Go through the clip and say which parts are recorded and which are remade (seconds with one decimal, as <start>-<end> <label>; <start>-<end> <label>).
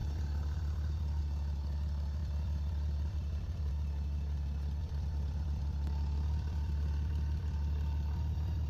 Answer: 0.0-1.2 remade; 1.2-2.2 recorded; 2.2-3.7 remade; 3.7-4.8 recorded; 4.8-8.7 remade